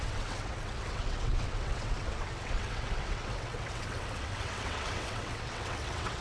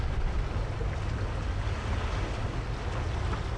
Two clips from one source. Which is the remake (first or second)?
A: first